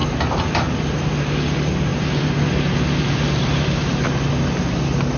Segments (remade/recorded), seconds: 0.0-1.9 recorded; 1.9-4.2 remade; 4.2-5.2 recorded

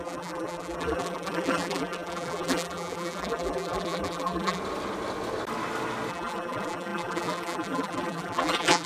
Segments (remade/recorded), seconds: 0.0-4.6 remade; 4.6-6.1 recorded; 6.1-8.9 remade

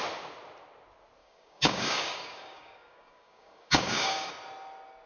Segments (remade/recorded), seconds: 0.0-1.2 recorded; 1.2-4.3 remade; 4.3-5.1 recorded